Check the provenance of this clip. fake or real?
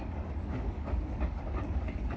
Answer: fake